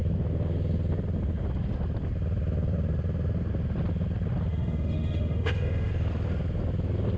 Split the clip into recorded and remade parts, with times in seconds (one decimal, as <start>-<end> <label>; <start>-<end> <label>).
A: 0.0-4.5 recorded; 4.5-5.9 remade; 5.9-7.2 recorded